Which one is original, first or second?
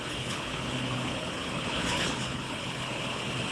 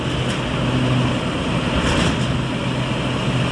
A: second